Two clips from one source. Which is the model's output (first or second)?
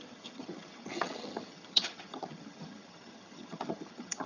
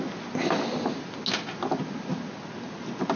first